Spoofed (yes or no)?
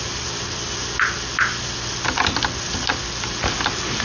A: no